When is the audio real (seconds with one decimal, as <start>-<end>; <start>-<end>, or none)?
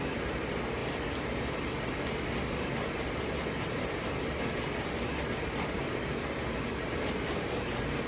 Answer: 0.0-8.1